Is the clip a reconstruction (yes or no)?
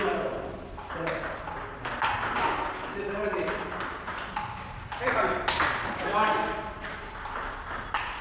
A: no